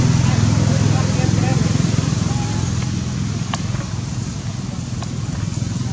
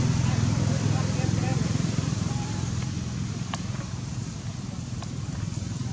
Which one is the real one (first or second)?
first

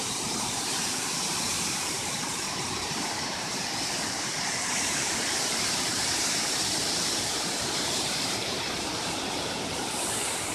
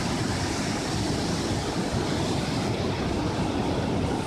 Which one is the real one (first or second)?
second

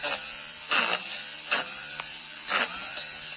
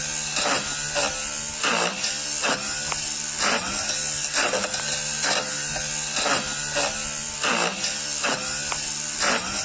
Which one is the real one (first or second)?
second